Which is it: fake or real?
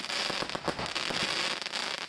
real